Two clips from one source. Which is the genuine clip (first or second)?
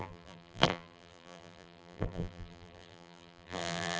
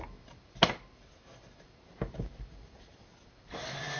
second